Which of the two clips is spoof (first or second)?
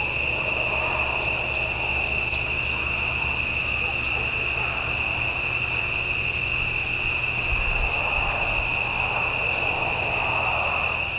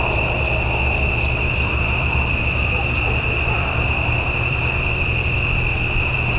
second